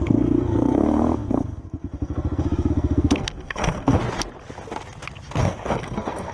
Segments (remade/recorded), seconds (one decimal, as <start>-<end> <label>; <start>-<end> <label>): 0.0-4.0 remade; 4.0-5.4 recorded; 5.4-6.3 remade